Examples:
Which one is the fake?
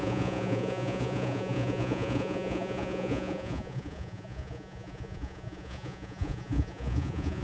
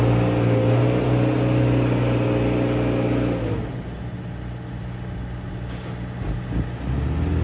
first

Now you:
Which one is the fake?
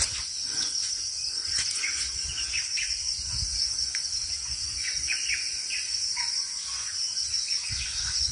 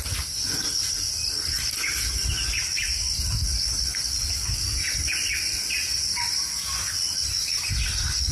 first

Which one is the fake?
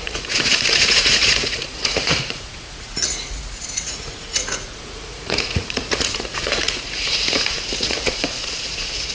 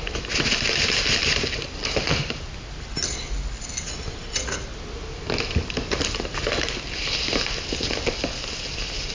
first